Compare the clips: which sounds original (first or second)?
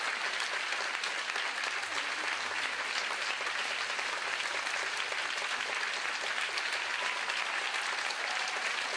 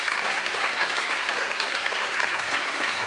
first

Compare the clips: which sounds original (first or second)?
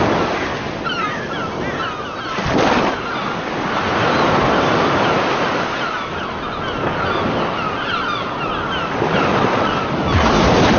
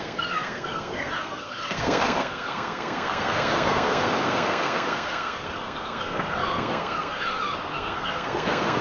first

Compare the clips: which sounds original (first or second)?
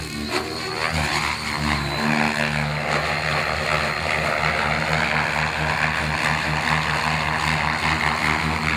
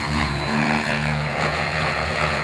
first